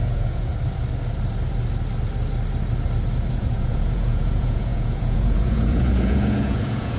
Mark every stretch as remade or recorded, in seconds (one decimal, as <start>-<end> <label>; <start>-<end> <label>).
0.0-0.5 remade; 0.5-3.3 recorded; 3.3-7.0 remade